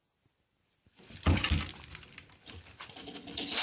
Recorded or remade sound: recorded